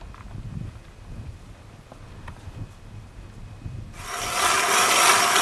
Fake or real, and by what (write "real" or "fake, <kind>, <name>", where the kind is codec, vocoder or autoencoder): real